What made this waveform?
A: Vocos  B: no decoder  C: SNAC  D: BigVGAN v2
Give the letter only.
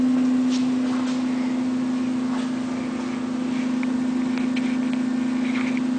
B